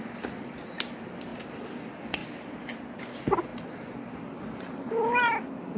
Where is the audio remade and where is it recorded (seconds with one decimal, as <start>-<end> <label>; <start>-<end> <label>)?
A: 0.0-1.3 recorded; 1.3-1.8 remade; 1.8-2.2 recorded; 2.2-3.0 remade; 3.0-3.5 recorded; 3.5-4.8 remade; 4.8-5.8 recorded